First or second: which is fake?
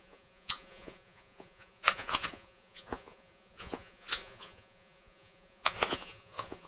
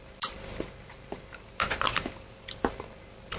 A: first